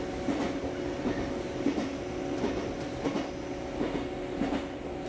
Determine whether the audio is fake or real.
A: real